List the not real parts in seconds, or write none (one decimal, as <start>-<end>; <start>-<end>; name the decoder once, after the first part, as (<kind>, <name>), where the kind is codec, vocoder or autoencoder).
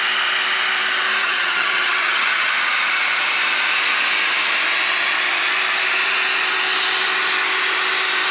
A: 1.2-2.5 (vocoder, HiFi-GAN)